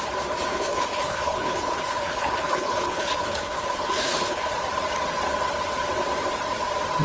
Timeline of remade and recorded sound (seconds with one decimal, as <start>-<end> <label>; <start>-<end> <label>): 0.0-0.5 recorded; 0.5-4.5 remade; 4.5-7.0 recorded